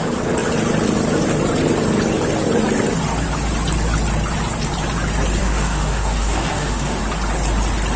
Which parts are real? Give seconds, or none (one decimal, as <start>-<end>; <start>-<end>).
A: 0.0-5.4; 7.0-8.0